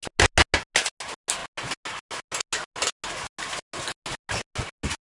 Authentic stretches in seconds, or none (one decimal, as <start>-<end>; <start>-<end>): 0.0-5.0